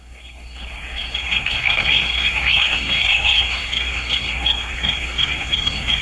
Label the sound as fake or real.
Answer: fake